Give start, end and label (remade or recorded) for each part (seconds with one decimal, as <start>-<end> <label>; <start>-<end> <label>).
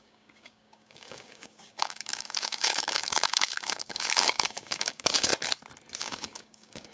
0.0-5.3 remade; 5.3-6.0 recorded; 6.0-6.9 remade